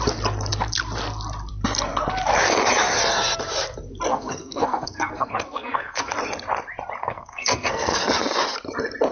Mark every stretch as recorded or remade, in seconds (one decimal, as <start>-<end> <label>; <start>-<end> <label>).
0.0-4.1 recorded; 4.1-6.1 remade; 6.1-7.0 recorded; 7.0-8.0 remade; 8.0-9.1 recorded